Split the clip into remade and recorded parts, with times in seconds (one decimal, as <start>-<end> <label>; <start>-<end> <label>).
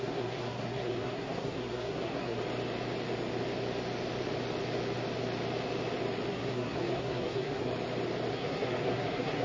0.0-2.4 remade; 2.4-6.3 recorded; 6.3-7.7 remade; 7.7-8.3 recorded; 8.3-9.4 remade